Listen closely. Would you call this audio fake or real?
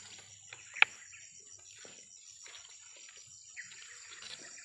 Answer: real